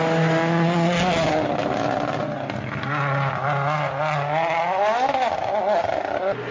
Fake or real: real